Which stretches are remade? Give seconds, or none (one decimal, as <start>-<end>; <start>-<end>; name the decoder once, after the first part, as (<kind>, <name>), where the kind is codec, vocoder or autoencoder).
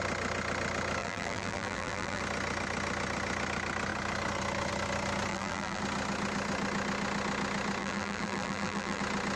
1.0-2.2 (vocoder, BigVGAN v2); 5.3-5.8; 7.8-9.0